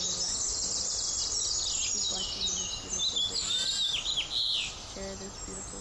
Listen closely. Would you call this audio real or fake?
real